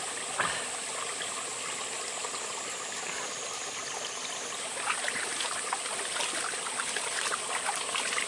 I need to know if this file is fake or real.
real